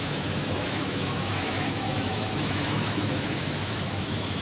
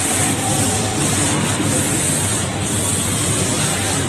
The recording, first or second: second